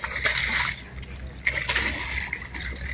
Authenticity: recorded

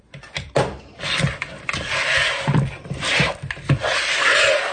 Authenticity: recorded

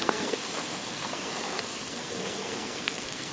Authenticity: remade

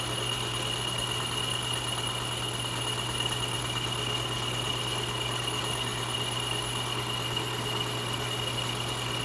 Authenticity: recorded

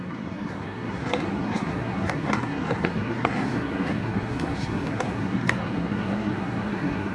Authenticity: remade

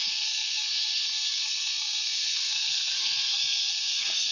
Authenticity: remade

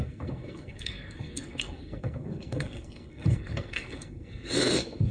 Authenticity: remade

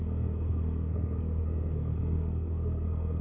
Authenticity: remade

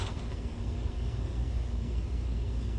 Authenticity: remade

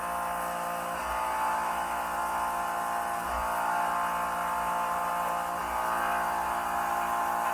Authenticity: recorded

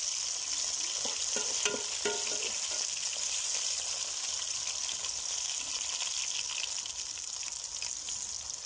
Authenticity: recorded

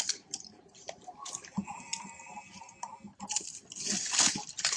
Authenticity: recorded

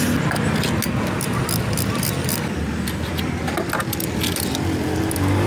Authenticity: recorded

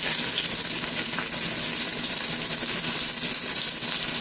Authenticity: recorded